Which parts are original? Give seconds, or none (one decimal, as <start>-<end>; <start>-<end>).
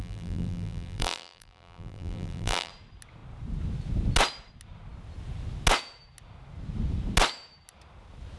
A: 2.7-8.4